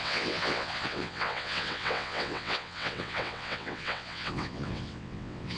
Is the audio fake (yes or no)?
yes